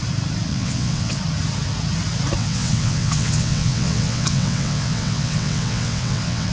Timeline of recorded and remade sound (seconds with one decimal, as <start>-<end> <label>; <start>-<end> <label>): 0.0-0.5 recorded; 0.5-1.2 remade; 1.2-2.4 recorded; 2.4-6.5 remade